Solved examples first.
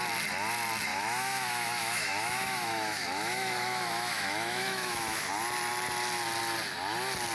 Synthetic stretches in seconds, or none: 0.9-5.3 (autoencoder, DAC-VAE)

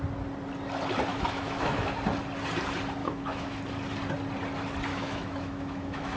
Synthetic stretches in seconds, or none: 1.1-1.9 (autoencoder, DAC-VAE); 3.0-3.6; 4.9-6.2

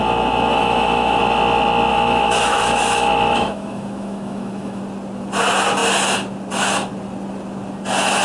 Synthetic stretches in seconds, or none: 0.5-1.2 (autoencoder, DAC-VAE); 1.9-4.8

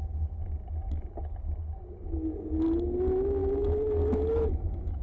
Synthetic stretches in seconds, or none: 3.4-5.0 (autoencoder, DAC-VAE)

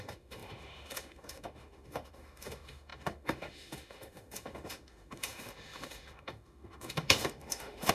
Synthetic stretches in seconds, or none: 0.0-7.9 (autoencoder, DAC-VAE)

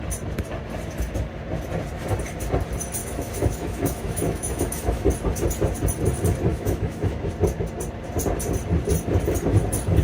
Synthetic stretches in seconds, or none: 3.0-5.1 (autoencoder, DAC-VAE); 6.5-7.3

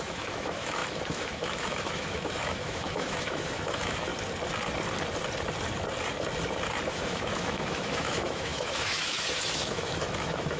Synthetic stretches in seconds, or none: 0.0-4.1 (autoencoder, DAC-VAE); 6.9-10.6

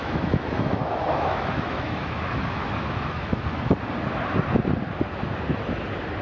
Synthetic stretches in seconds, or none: 0.0-3.7 (autoencoder, DAC-VAE)